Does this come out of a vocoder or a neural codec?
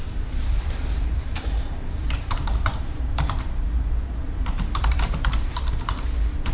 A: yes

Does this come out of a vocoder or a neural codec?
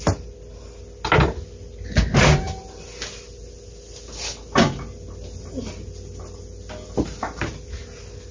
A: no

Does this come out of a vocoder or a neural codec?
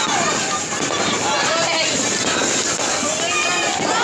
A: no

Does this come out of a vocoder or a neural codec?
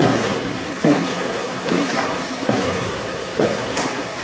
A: yes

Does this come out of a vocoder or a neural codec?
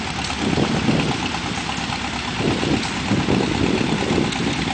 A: no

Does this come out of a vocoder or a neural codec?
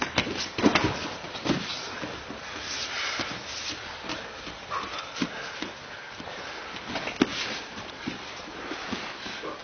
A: no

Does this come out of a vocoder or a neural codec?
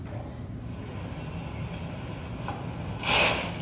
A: no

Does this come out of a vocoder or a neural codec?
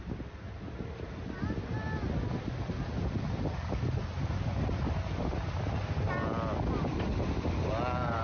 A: no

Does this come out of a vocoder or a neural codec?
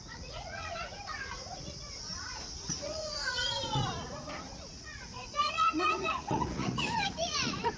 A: yes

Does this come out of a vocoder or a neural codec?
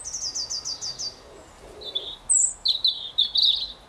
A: no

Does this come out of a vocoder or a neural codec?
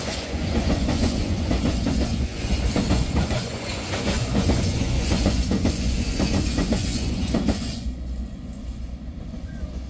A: yes